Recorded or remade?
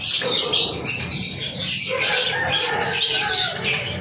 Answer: recorded